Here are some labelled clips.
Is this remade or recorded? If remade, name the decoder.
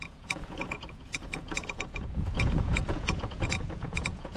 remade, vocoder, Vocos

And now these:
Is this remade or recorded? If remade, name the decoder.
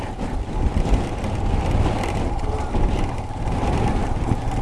recorded